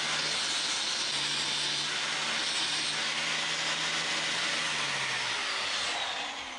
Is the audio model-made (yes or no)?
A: no